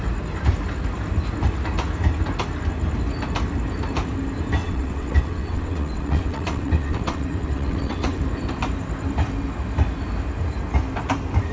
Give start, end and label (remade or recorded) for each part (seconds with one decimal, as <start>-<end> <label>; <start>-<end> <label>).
0.0-4.6 recorded; 4.6-8.2 remade; 8.2-11.5 recorded